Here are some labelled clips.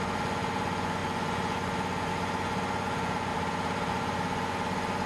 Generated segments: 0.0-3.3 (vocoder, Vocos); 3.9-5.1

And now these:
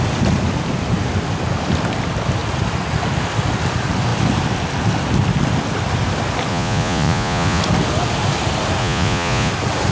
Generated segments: 6.5-7.6 (vocoder, Vocos); 8.8-9.5